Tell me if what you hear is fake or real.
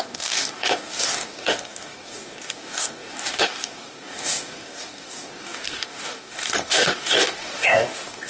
fake